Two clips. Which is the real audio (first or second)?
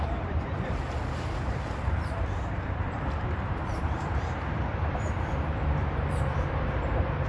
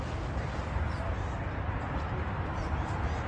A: second